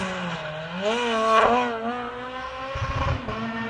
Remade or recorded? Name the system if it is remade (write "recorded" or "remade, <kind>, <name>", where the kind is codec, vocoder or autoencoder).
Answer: recorded